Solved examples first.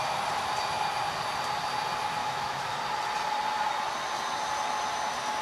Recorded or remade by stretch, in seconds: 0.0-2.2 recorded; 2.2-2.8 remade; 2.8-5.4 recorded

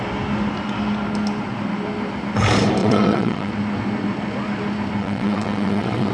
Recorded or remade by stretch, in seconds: 0.0-2.8 recorded; 2.8-3.5 remade; 3.5-5.0 recorded; 5.0-6.1 remade

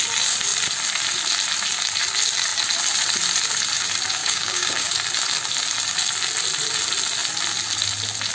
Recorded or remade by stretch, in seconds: 0.0-4.2 recorded; 4.2-4.9 remade; 4.9-8.3 recorded

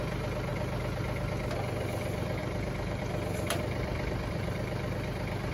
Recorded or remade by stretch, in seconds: 0.0-2.4 recorded; 2.4-3.0 remade; 3.0-5.5 recorded

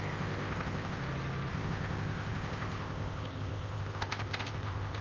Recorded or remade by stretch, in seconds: 0.0-1.0 remade; 1.0-1.5 recorded; 1.5-5.0 remade

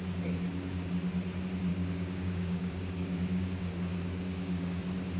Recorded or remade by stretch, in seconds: 0.0-1.7 recorded; 1.7-4.8 remade; 4.8-5.2 recorded

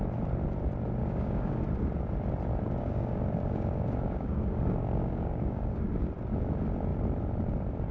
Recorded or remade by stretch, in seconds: 0.0-1.0 recorded; 1.0-1.6 remade; 1.6-2.8 recorded; 2.8-5.9 remade; 5.9-7.9 recorded

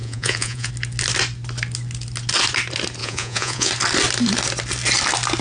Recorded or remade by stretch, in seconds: 0.0-0.7 remade; 0.7-3.0 recorded; 3.0-3.7 remade; 3.7-5.4 recorded